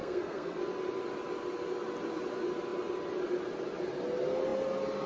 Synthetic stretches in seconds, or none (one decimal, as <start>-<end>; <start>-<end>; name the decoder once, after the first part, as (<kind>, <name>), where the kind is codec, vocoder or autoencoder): 0.0-0.6 (codec, SNAC)